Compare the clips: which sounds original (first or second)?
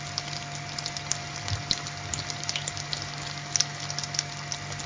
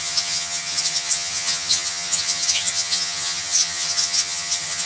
first